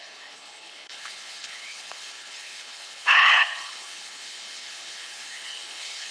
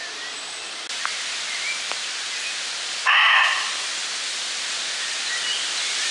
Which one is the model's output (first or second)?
first